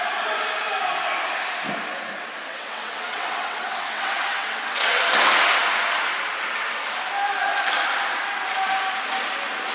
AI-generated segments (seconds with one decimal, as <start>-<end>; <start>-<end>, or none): 2.5-5.0